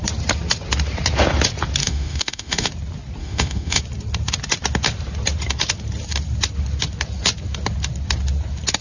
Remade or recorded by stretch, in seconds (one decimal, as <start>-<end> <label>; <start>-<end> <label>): 0.0-1.8 recorded; 1.8-2.7 remade; 2.7-3.2 recorded; 3.2-3.8 remade; 3.8-8.8 recorded